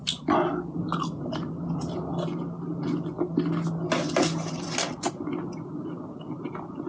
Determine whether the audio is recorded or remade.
recorded